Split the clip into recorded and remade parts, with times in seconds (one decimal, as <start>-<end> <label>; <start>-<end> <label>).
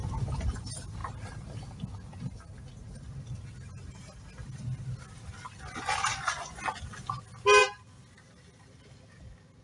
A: 0.0-6.1 recorded; 6.1-6.6 remade; 6.6-9.6 recorded